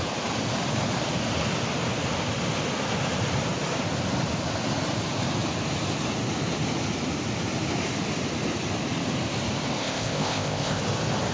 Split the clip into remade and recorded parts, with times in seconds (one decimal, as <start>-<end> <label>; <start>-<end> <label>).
0.0-9.8 recorded; 9.8-10.8 remade; 10.8-11.3 recorded